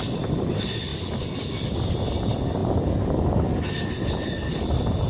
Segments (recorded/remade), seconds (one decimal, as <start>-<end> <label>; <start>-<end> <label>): 0.0-5.1 recorded